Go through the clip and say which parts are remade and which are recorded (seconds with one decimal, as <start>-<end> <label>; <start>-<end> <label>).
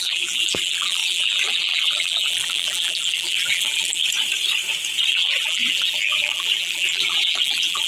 0.0-4.0 remade; 4.0-5.1 recorded; 5.1-7.9 remade